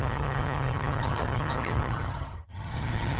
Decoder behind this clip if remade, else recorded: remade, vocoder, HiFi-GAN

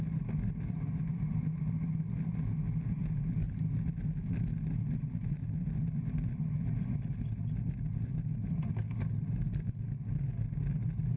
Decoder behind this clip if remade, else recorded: recorded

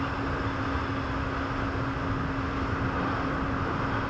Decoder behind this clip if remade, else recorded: recorded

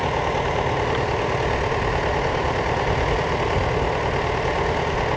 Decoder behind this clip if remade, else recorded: recorded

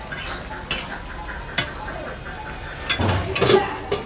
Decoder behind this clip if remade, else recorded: recorded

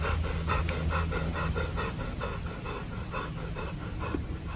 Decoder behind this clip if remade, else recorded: recorded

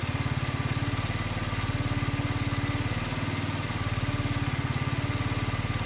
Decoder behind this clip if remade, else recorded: recorded